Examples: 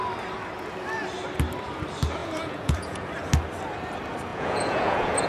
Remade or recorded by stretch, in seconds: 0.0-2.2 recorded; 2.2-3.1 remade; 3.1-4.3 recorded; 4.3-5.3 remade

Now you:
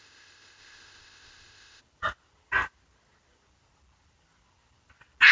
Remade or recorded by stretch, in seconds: 0.0-1.8 remade; 1.8-5.3 recorded

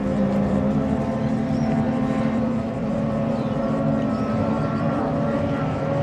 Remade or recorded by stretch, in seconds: 0.0-3.6 remade; 3.6-4.4 recorded; 4.4-5.0 remade; 5.0-6.0 recorded

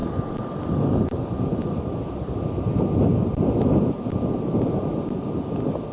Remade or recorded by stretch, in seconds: 0.0-1.0 remade; 1.0-5.9 recorded

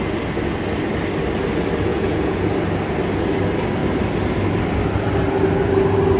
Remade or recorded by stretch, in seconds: 0.0-1.9 recorded; 1.9-2.5 remade; 2.5-6.2 recorded

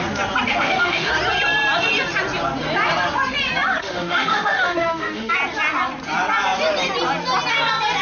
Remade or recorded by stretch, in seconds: 0.0-0.5 recorded; 0.5-1.1 remade; 1.1-3.8 recorded; 3.8-5.3 remade; 5.3-8.0 recorded

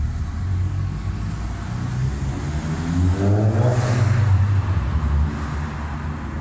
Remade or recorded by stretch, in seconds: 0.0-0.5 recorded; 0.5-1.1 remade; 1.1-6.4 recorded

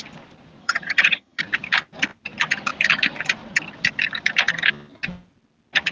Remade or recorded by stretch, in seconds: 0.0-0.6 recorded; 0.6-1.4 remade; 1.4-5.9 recorded